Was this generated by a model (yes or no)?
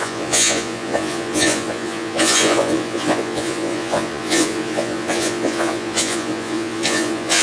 yes